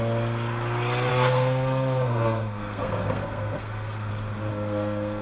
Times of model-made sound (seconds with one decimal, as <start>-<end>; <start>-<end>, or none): 1.1-4.1; 4.5-5.2